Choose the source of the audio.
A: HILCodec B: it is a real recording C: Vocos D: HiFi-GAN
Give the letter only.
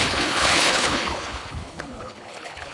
A